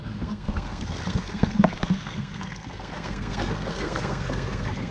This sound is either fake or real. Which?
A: fake